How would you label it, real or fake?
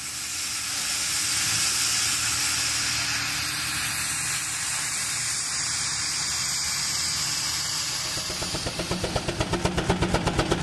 real